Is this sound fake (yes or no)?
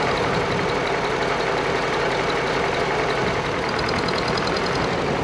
no